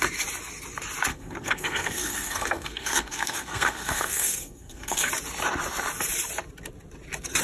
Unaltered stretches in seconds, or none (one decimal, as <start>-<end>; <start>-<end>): 0.0-1.1; 5.1-7.4

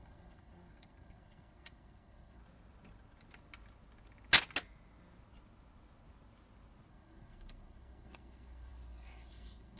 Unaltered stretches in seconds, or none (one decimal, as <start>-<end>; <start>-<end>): 2.4-6.9